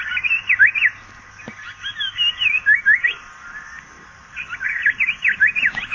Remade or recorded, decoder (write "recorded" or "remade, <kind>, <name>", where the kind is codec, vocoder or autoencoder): recorded